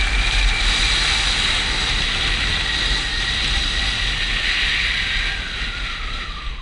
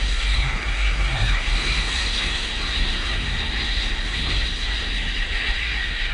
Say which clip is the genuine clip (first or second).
first